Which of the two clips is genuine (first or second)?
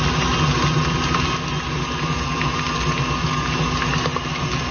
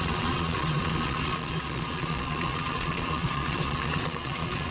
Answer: first